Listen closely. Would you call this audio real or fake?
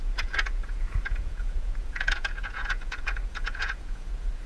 fake